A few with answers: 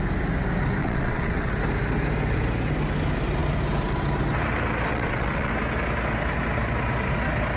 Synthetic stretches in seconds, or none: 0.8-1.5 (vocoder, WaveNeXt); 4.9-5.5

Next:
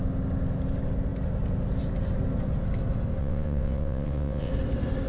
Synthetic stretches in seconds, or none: 3.2-4.5 (vocoder, WaveNeXt)

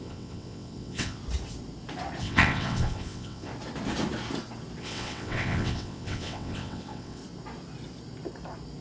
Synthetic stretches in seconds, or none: 0.0-1.2 (vocoder, WaveNeXt); 2.2-3.5; 4.8-7.2